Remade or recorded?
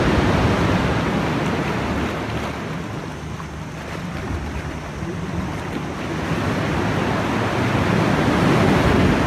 recorded